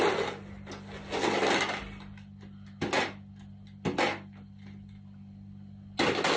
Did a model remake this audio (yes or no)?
no